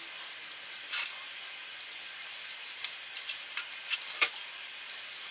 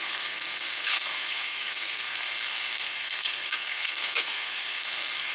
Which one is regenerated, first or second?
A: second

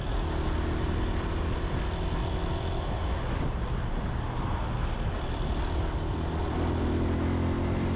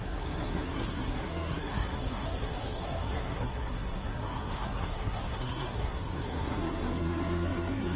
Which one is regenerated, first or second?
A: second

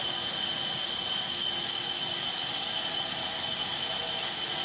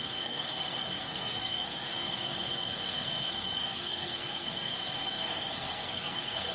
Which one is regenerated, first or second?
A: second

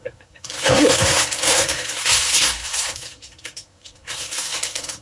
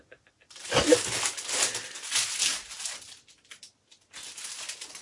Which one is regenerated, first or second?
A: first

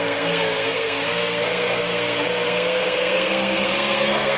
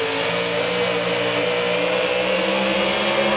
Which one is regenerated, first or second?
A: first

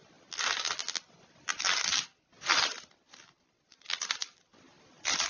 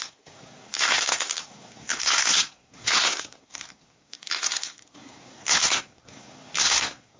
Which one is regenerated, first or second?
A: second